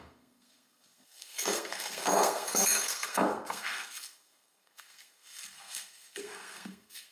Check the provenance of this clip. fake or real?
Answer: fake